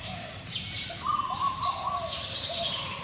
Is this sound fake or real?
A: fake